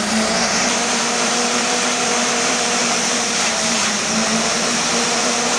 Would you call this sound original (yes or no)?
no